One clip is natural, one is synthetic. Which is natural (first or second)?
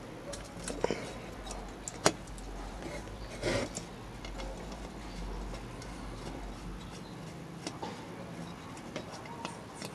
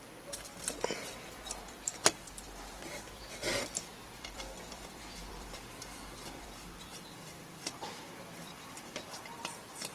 first